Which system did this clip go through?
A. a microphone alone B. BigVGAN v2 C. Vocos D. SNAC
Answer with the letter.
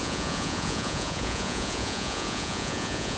C